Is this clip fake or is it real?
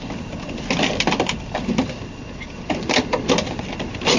real